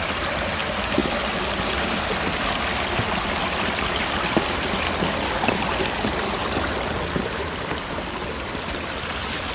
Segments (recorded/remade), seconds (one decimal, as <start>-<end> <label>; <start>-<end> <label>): 0.0-9.5 recorded